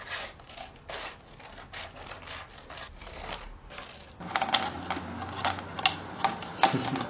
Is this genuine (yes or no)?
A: yes